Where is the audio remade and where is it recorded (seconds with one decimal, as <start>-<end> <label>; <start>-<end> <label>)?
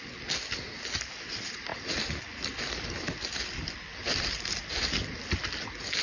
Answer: 0.0-1.7 recorded; 1.7-4.7 remade; 4.7-6.0 recorded